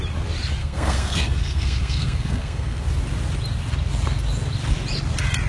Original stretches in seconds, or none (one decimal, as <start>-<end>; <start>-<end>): 0.0-0.6; 2.8-5.5